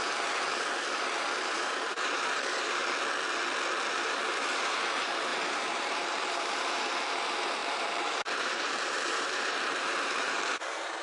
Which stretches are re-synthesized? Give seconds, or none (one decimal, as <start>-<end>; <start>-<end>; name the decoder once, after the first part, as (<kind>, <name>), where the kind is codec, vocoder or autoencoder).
0.0-2.8 (vocoder, BigVGAN v2); 3.9-11.0